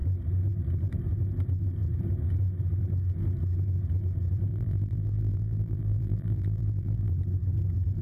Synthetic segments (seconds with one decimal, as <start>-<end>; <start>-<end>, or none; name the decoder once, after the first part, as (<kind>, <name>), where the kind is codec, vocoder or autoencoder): 4.5-7.1 (vocoder, BigVGAN v2)

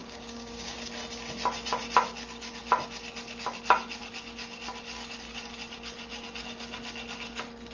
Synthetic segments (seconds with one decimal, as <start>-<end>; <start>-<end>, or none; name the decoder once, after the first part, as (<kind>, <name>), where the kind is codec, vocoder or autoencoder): 0.0-0.9 (codec, DAC)

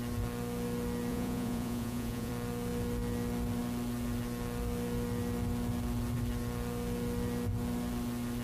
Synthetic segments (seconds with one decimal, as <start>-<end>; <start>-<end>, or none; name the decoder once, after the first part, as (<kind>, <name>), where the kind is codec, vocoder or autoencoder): 1.1-2.3 (vocoder, Vocos)

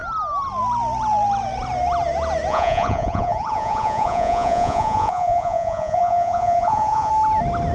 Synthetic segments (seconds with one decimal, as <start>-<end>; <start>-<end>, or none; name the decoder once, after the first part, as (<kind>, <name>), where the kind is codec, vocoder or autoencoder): 2.5-7.1 (vocoder, Vocos)

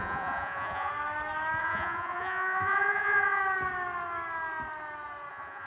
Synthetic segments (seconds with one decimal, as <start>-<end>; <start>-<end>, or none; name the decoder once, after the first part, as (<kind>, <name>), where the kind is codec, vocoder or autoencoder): 0.0-0.9 (vocoder, Vocos); 1.6-3.4; 5.3-5.7

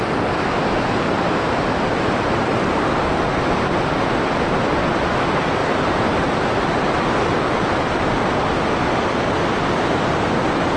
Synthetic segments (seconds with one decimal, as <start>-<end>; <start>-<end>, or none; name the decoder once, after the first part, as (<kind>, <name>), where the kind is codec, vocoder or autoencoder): 5.6-6.9 (vocoder, BigVGAN v2)

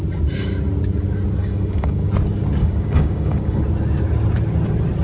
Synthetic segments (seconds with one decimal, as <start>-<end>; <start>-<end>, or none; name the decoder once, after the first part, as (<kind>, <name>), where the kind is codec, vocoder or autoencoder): 1.4-2.1 (codec, DAC); 2.6-3.6